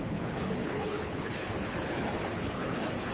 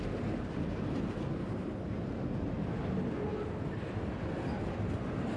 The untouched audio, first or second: second